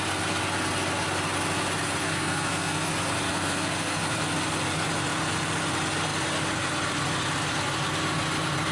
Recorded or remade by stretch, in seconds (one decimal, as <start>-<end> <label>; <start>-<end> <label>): 0.0-2.0 recorded; 2.0-2.9 remade; 2.9-3.3 recorded; 3.3-4.0 remade; 4.0-8.7 recorded